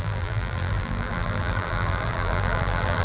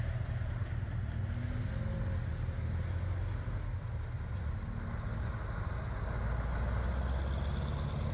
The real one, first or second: second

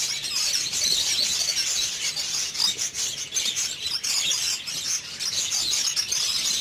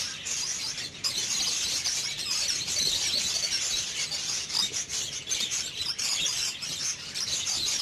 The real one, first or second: first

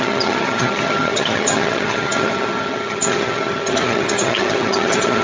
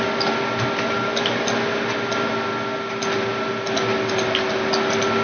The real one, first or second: second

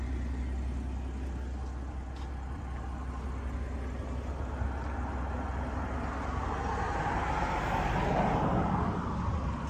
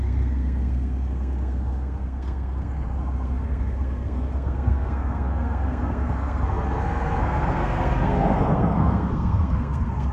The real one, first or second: first